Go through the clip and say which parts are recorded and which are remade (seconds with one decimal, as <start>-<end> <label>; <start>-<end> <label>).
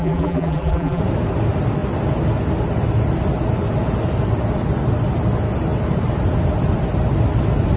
0.0-1.0 remade; 1.0-7.8 recorded